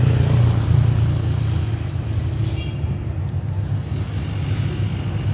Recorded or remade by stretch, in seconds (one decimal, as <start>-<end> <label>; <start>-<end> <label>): 0.0-5.3 recorded